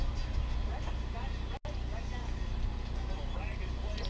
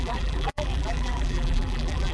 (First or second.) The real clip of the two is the first